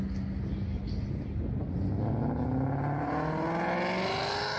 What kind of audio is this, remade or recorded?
recorded